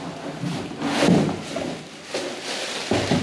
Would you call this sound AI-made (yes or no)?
no